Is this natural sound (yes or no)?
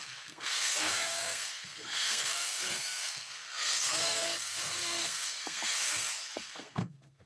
no